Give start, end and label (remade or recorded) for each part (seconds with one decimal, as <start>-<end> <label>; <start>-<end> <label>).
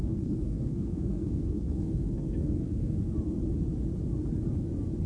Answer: 0.0-3.1 remade; 3.1-5.1 recorded